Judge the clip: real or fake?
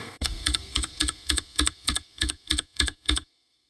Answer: fake